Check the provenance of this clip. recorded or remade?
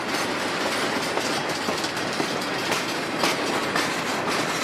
recorded